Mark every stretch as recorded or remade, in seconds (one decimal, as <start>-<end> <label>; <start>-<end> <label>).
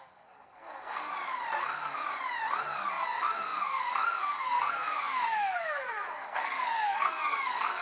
0.0-1.1 remade; 1.1-1.6 recorded; 1.6-2.0 remade; 2.0-2.9 recorded; 2.9-7.8 remade